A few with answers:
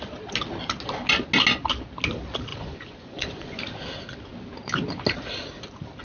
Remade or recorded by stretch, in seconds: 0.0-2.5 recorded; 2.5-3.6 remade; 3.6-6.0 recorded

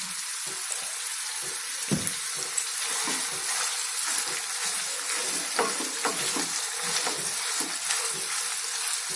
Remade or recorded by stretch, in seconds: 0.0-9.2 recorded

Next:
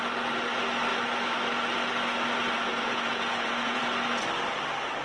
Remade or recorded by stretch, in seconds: 0.0-2.7 recorded; 2.7-3.8 remade; 3.8-5.0 recorded

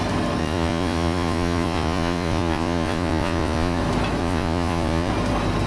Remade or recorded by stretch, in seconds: 0.0-0.4 recorded; 0.4-3.8 remade; 3.8-4.2 recorded; 4.2-5.1 remade; 5.1-5.7 recorded